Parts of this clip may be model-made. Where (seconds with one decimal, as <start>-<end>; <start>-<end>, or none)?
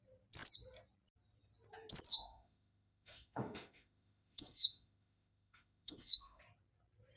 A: 2.1-6.4